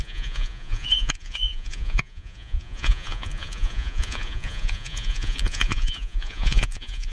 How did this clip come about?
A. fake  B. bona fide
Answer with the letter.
A